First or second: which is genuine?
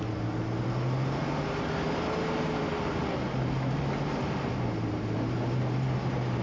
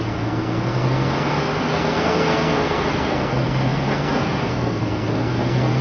first